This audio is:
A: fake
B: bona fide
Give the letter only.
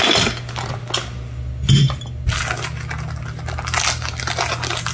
B